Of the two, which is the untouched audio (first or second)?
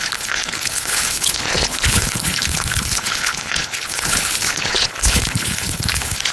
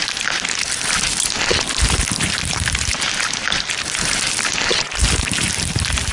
second